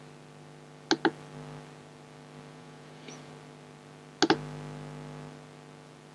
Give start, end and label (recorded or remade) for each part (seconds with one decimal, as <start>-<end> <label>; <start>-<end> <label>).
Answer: 0.0-2.5 recorded; 2.5-3.3 remade; 3.3-6.1 recorded